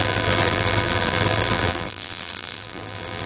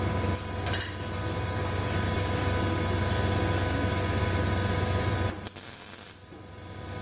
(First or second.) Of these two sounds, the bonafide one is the second